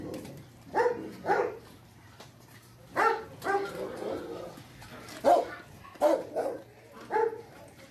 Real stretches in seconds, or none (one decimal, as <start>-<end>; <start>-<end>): 2.6-7.3